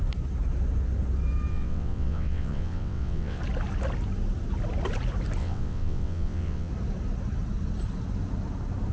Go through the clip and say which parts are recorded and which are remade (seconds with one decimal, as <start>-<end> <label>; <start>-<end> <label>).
0.0-1.5 recorded; 1.5-3.4 remade; 3.4-5.4 recorded; 5.4-6.7 remade; 6.7-8.9 recorded